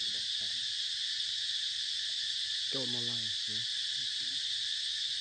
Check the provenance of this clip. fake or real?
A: real